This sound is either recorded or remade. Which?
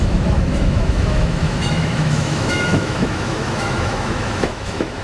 remade